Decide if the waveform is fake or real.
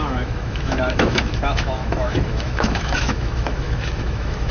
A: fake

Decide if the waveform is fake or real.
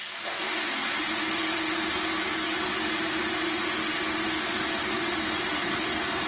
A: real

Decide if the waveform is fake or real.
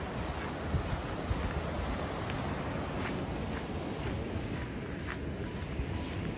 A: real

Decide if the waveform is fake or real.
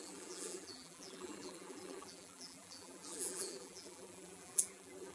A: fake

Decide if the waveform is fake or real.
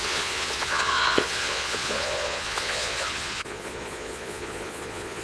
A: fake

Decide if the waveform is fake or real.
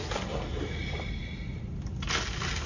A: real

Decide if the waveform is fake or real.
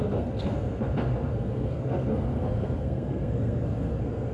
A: fake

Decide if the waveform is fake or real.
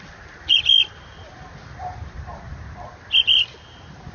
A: real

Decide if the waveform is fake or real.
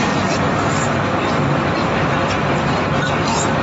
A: real